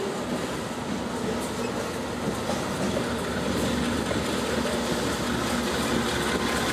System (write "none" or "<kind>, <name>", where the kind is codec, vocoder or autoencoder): none